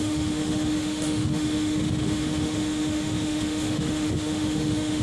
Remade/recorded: remade